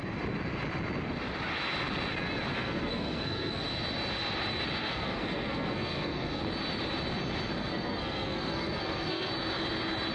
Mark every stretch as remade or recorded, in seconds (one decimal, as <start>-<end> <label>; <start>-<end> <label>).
0.0-2.5 recorded; 2.5-3.6 remade; 3.6-4.8 recorded; 4.8-6.4 remade; 6.4-7.6 recorded; 7.6-9.3 remade; 9.3-10.1 recorded